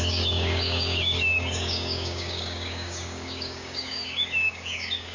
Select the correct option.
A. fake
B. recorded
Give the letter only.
A